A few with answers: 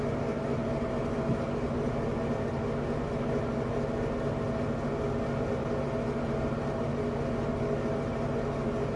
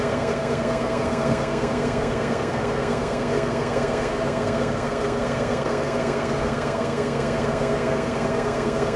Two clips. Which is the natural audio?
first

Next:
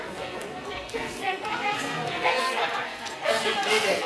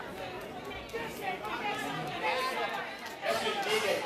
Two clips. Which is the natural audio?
second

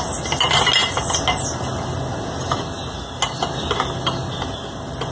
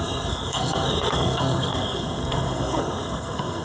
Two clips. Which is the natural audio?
first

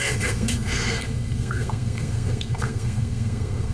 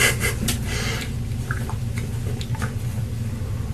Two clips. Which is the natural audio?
second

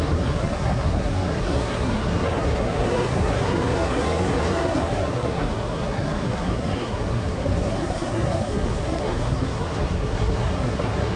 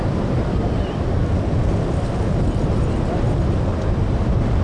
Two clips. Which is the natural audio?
second